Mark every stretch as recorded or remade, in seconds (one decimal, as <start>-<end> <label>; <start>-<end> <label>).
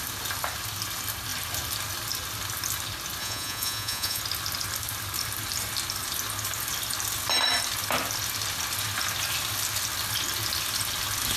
0.0-3.2 recorded; 3.2-4.2 remade; 4.2-11.4 recorded